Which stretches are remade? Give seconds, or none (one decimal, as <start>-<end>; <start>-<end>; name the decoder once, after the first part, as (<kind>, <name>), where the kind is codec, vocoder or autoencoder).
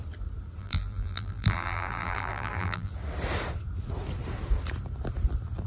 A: 0.6-2.9 (vocoder, BigVGAN v2)